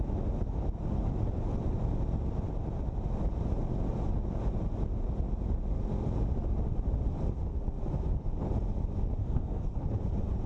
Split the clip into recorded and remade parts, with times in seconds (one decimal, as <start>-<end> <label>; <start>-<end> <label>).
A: 0.0-9.2 recorded; 9.2-9.8 remade; 9.8-10.5 recorded